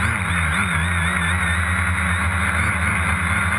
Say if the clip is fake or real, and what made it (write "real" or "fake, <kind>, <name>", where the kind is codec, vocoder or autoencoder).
real